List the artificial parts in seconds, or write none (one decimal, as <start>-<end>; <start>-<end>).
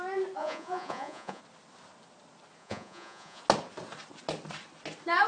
0.4-1.4; 2.6-3.4